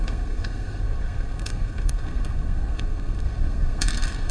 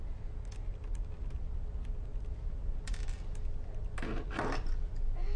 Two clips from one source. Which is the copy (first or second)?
first